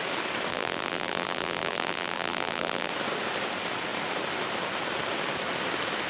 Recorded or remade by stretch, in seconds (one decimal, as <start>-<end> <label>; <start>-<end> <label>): 0.0-0.5 recorded; 0.5-2.9 remade; 2.9-6.1 recorded